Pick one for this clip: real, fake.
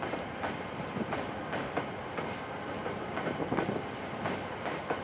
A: real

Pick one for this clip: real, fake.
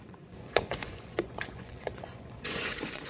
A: fake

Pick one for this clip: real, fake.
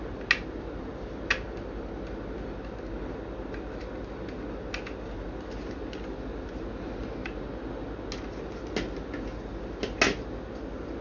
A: real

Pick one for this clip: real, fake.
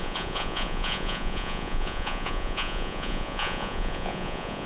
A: fake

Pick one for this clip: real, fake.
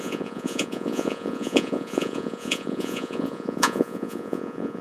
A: fake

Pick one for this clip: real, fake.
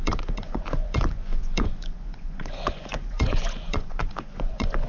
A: fake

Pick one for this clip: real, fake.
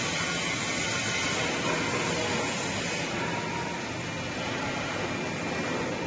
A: real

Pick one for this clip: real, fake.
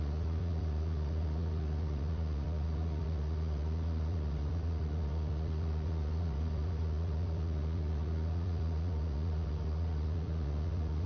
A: fake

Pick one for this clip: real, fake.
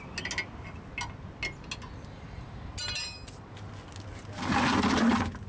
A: real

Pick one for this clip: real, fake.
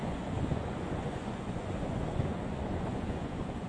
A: fake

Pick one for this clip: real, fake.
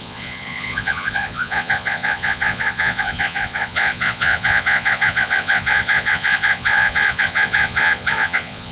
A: fake